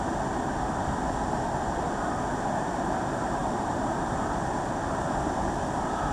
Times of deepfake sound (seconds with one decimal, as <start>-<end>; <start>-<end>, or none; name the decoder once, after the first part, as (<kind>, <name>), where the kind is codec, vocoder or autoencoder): 3.4-5.0 (vocoder, BigVGAN v2)